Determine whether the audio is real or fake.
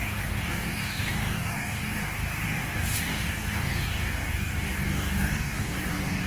fake